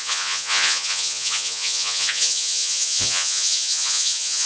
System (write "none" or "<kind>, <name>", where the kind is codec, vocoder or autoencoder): vocoder, Vocos